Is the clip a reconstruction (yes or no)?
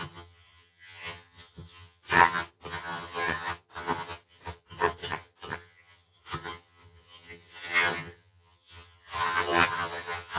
yes